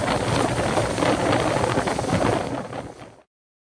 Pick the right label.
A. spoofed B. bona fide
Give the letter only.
B